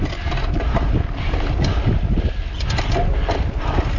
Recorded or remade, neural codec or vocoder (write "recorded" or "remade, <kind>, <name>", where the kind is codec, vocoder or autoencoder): recorded